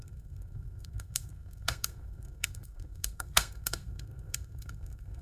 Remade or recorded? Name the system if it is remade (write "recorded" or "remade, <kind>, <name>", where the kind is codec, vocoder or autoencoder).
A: remade, codec, SNAC